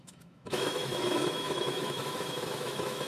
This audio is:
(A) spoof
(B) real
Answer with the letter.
A